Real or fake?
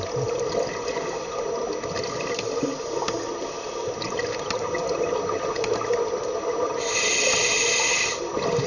real